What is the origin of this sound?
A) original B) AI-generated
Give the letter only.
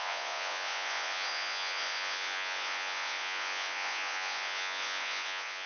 B